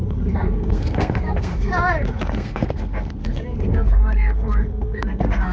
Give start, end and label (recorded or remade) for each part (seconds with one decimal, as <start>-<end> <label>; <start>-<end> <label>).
0.0-5.5 remade